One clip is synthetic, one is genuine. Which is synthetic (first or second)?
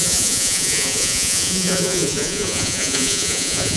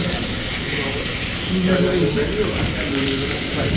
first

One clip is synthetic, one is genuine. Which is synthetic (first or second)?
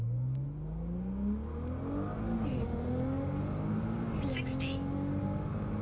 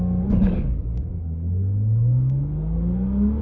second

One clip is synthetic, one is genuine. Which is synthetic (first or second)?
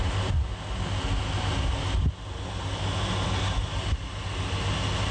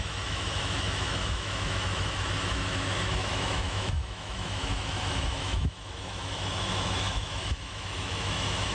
second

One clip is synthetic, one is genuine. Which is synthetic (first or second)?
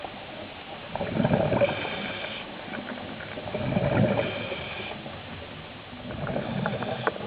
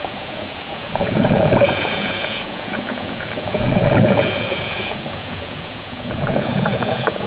second